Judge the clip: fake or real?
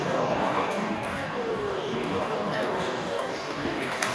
fake